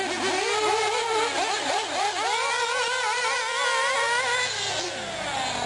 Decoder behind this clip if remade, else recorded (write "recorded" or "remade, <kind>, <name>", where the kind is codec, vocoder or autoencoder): recorded